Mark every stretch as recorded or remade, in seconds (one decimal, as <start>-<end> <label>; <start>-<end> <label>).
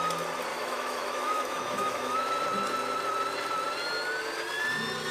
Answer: 0.0-0.5 recorded; 0.5-2.4 remade; 2.4-5.1 recorded